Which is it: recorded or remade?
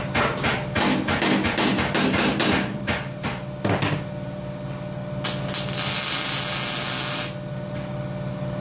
recorded